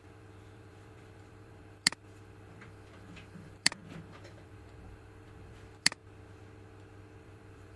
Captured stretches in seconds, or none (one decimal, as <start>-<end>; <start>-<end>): 6.0-7.2